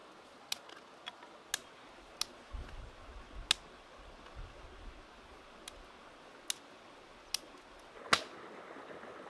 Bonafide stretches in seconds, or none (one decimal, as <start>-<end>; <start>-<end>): 0.0-9.3